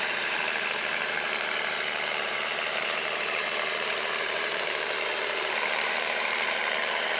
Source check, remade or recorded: remade